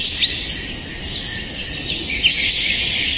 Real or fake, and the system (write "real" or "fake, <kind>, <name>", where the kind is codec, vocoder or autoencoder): real